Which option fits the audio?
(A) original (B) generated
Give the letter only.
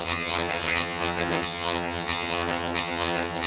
B